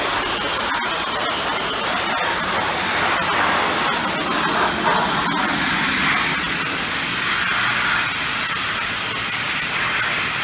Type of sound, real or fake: real